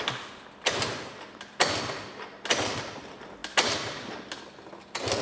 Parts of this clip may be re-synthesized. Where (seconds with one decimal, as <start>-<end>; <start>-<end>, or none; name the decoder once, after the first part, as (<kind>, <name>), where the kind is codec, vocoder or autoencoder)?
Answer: none